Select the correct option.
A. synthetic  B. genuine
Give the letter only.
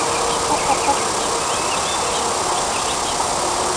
B